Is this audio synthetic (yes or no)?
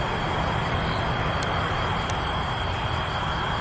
no